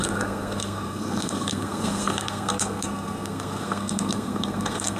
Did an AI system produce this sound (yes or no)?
yes